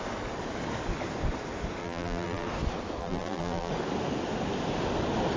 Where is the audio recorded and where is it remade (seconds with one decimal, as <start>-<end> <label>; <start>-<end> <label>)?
0.0-1.8 recorded; 1.8-2.5 remade; 2.5-3.0 recorded; 3.0-3.7 remade; 3.7-5.4 recorded